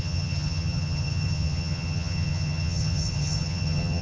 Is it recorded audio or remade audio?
remade